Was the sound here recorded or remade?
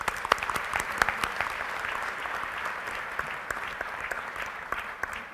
remade